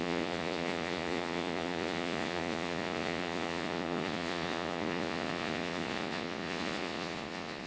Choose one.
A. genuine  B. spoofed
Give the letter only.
B